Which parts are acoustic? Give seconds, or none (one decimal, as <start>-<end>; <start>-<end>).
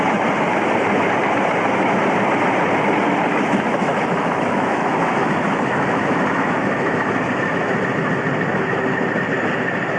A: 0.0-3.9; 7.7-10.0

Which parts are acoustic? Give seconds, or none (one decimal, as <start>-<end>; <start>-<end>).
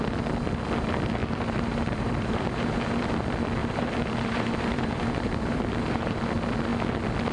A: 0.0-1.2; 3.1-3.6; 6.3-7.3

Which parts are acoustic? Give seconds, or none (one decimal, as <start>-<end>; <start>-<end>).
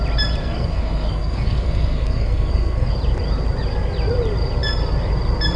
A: 0.0-0.4; 2.9-5.6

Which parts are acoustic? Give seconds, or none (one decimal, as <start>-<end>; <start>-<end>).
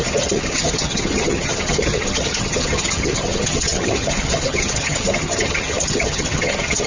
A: none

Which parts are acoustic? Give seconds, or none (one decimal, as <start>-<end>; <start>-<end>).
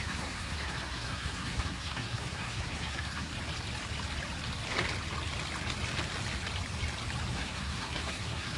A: 3.3-7.3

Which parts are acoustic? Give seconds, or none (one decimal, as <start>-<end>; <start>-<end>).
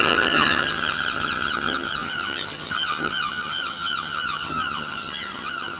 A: none